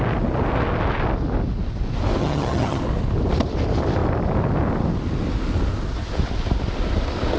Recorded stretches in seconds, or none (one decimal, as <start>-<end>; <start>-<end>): 0.0-2.2; 2.8-7.4